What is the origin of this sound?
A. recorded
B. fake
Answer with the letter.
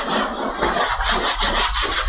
A